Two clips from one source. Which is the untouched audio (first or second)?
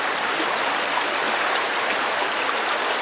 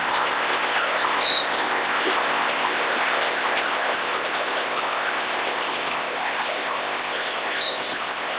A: first